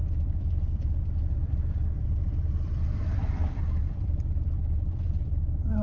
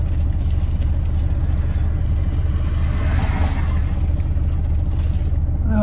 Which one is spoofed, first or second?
first